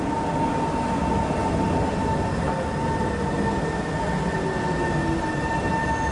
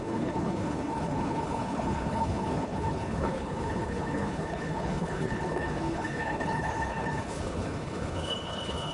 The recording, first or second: first